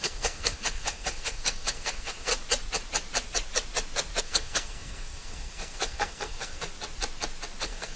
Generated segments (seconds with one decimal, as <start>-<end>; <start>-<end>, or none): 0.0-2.3; 4.2-6.7; 7.6-8.0